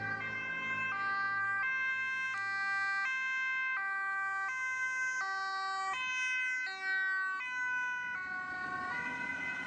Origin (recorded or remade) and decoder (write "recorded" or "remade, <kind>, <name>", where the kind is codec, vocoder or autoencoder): recorded